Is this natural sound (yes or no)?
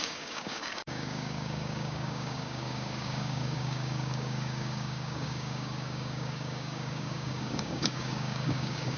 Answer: no